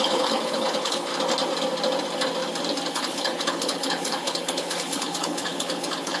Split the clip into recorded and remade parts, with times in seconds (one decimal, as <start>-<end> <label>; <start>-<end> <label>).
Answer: 0.0-1.1 remade; 1.1-2.9 recorded; 2.9-6.2 remade